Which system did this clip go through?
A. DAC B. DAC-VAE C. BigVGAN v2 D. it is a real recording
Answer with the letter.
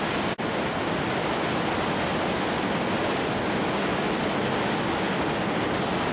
D